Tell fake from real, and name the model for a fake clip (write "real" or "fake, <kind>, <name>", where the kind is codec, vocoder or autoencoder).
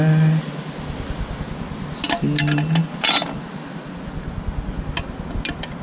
real